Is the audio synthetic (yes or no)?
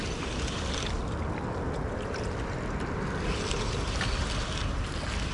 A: no